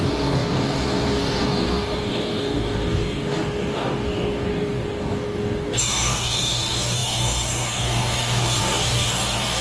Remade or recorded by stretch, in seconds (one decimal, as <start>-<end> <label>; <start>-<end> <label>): 0.0-9.6 remade